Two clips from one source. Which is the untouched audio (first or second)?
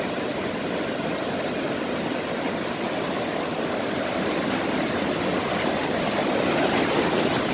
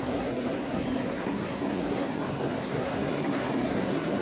first